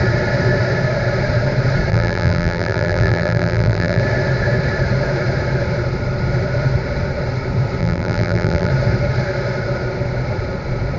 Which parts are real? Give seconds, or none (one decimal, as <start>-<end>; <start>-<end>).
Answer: 0.0-1.9; 4.0-7.8; 8.7-11.0